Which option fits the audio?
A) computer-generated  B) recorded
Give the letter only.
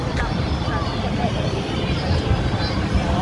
B